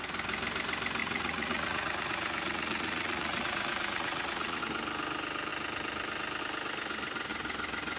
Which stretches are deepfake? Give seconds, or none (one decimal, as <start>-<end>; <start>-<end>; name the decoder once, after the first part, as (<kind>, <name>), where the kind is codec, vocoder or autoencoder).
1.0-4.6 (vocoder, Vocos)